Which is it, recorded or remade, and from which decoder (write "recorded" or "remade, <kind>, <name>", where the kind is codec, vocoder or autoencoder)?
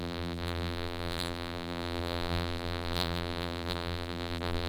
remade, vocoder, BigVGAN v2